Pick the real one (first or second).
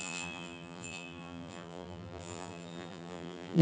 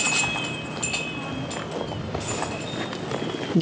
second